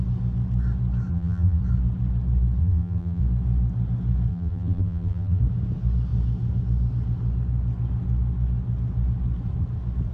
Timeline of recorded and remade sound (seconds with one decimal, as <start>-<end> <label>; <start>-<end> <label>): 0.0-1.1 recorded; 1.1-1.6 remade; 1.6-2.6 recorded; 2.6-3.2 remade; 3.2-4.3 recorded; 4.3-5.4 remade; 5.4-10.1 recorded